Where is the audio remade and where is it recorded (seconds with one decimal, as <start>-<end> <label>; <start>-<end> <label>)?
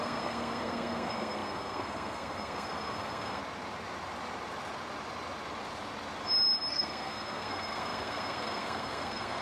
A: 0.0-3.4 remade; 3.4-6.7 recorded; 6.7-9.4 remade